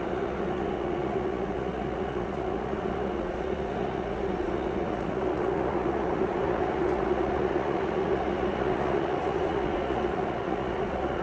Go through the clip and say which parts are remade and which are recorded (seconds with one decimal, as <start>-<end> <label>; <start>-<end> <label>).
0.0-11.2 remade